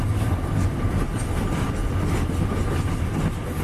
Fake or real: real